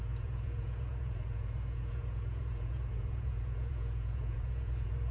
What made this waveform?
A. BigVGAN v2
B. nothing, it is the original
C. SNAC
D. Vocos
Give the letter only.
D